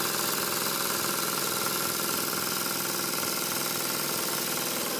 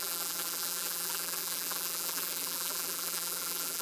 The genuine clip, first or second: first